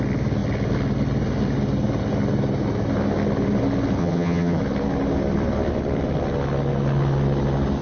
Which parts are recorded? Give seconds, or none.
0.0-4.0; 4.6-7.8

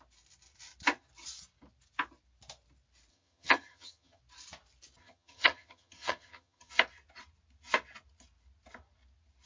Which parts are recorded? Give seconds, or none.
0.0-3.1; 4.2-5.0; 6.7-9.5

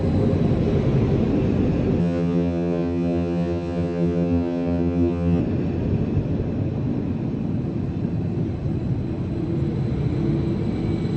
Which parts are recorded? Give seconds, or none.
0.0-2.0; 5.4-11.2

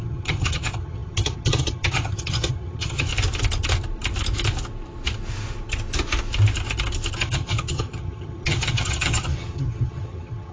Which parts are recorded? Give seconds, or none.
3.1-7.2